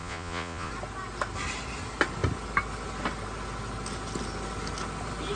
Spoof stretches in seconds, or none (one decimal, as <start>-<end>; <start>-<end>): 0.0-0.7